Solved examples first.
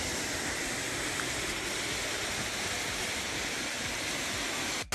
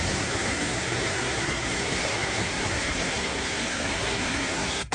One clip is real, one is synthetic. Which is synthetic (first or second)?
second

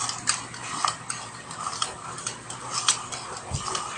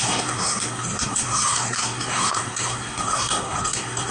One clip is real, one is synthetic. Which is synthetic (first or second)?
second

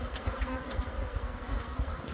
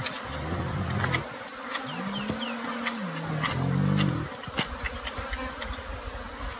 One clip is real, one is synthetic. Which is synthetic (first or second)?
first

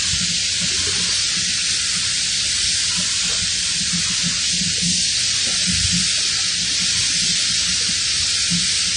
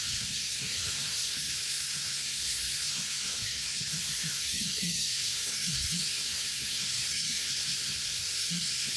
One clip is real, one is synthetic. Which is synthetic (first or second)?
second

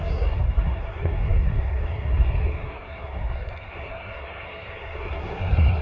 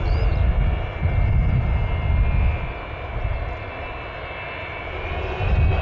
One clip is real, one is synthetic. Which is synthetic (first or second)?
first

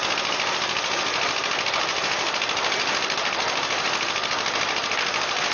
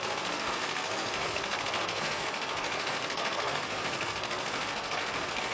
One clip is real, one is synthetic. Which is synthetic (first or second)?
second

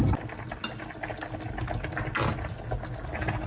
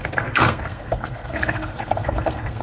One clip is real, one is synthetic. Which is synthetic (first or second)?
second